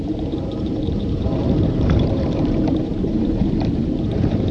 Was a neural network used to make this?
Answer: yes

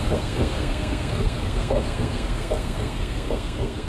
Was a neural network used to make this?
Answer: yes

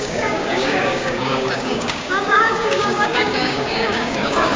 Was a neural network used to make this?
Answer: yes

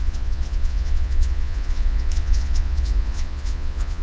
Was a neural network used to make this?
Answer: yes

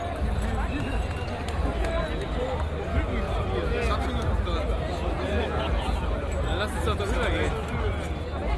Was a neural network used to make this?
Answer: no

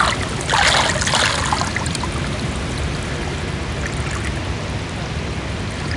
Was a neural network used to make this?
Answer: no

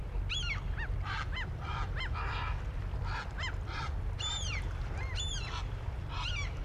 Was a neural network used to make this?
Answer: no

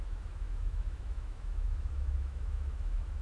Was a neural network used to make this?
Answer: yes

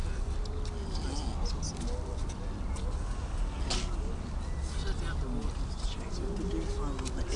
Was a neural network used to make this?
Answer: no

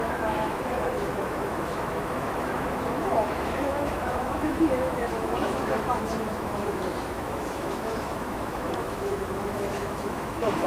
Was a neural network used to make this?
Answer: yes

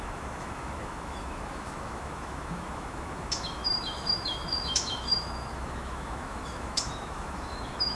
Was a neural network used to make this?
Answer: yes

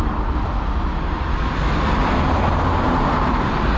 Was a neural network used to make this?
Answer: no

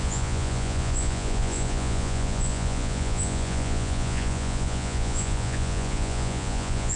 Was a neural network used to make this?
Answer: yes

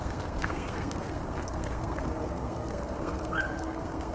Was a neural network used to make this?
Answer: yes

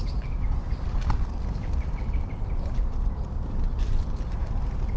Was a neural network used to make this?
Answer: no